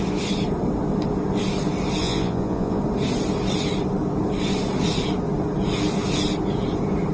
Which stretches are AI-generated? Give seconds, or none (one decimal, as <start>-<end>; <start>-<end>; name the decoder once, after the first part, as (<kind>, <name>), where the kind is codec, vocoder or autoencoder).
2.0-2.8 (vocoder, Vocos)